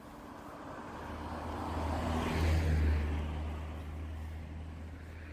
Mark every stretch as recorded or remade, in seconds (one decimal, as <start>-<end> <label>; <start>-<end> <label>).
0.0-5.3 recorded